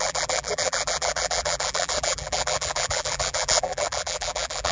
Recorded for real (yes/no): no